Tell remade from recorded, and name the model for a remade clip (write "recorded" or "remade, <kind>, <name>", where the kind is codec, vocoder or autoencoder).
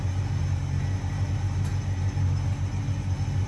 recorded